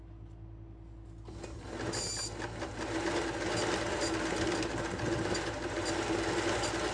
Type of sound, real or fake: real